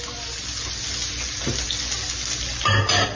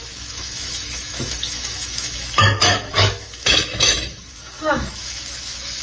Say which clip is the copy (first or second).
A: second